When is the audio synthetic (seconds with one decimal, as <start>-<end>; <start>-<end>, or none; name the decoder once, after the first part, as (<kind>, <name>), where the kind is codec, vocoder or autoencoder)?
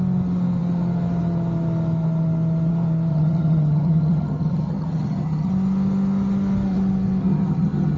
3.1-5.5 (vocoder, HiFi-GAN); 7.2-8.0